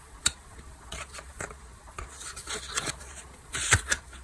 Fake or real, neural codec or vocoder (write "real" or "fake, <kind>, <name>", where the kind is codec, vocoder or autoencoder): fake, vocoder, Vocos